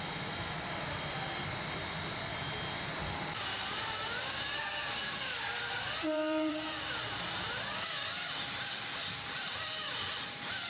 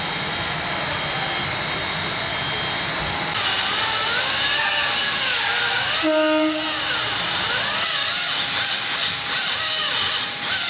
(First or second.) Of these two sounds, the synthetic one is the first